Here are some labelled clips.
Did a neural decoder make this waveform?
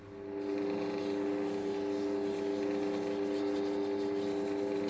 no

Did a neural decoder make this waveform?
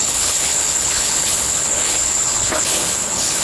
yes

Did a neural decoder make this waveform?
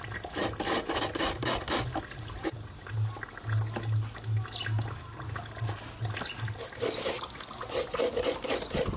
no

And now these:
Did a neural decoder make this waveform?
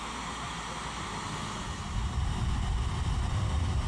no